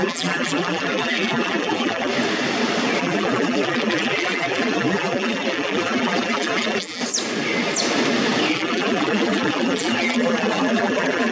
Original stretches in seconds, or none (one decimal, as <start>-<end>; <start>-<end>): 2.1-3.0; 7.0-8.5